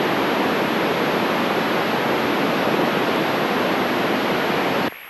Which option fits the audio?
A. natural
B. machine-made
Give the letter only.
A